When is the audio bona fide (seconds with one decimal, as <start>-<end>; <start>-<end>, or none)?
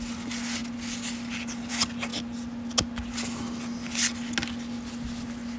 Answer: 0.0-5.6